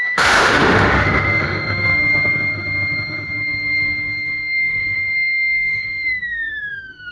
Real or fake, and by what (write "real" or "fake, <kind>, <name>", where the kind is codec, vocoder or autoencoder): fake, autoencoder, DAC-VAE